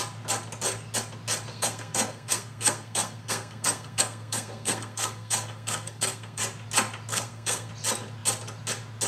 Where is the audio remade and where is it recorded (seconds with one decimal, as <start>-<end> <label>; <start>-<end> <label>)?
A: 0.0-1.5 recorded; 1.5-6.4 remade; 6.4-7.1 recorded; 7.1-7.7 remade; 7.7-9.1 recorded